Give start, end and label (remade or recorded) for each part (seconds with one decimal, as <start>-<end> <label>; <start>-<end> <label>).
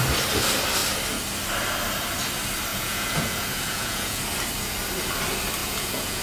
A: 0.0-2.7 recorded; 2.7-4.2 remade; 4.2-5.6 recorded; 5.6-6.2 remade